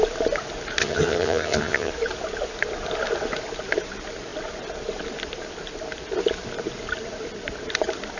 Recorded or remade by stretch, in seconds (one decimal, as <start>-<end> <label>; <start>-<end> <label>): 0.0-0.8 recorded; 0.8-1.9 remade; 1.9-8.2 recorded